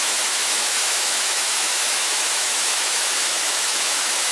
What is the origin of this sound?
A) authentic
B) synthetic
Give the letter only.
B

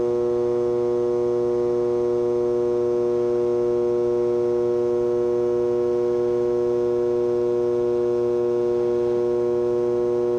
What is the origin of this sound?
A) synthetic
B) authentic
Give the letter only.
B